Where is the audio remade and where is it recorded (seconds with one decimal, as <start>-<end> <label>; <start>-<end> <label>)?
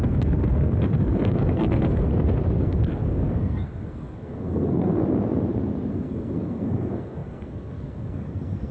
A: 0.0-2.1 remade; 2.1-2.6 recorded; 2.6-5.0 remade; 5.0-5.9 recorded; 5.9-8.7 remade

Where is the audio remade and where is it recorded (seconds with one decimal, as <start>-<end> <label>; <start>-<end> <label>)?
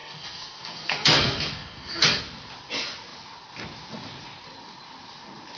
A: 0.0-2.2 remade; 2.2-5.6 recorded